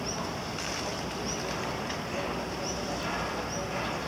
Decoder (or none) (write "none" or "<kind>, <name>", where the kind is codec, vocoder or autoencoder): none